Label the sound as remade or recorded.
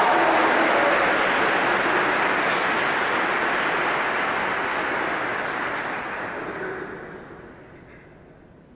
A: recorded